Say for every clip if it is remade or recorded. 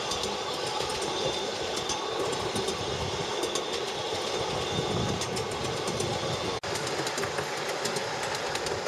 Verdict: recorded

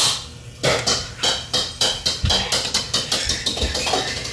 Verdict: recorded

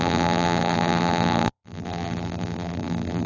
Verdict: remade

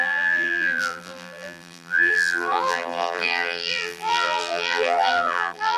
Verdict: remade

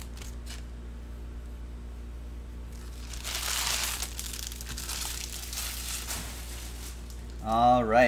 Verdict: recorded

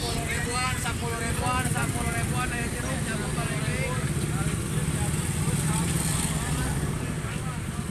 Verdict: recorded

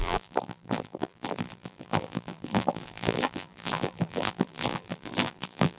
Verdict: remade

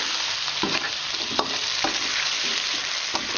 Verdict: recorded